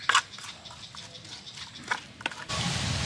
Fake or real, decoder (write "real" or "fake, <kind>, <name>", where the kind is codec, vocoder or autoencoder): real